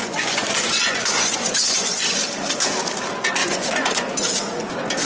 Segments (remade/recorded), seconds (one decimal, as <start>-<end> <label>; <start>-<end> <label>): 0.0-2.2 remade; 2.2-3.4 recorded; 3.4-4.3 remade; 4.3-5.0 recorded